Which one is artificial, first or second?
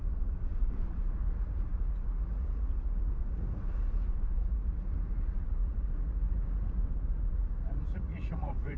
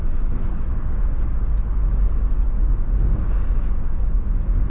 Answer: first